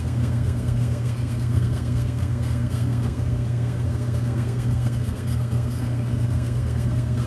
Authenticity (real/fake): fake